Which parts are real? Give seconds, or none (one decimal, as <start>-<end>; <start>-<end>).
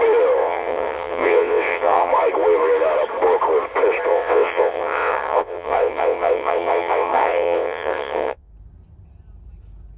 0.0-0.4; 2.1-4.1; 8.5-10.0